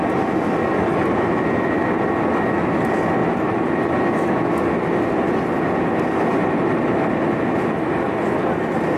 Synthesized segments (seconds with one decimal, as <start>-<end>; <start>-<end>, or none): 3.2-3.9; 6.4-7.3